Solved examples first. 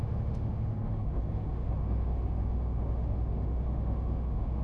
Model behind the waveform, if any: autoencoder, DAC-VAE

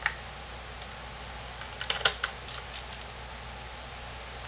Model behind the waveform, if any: none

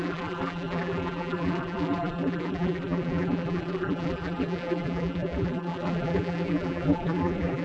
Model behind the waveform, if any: vocoder, BigVGAN v2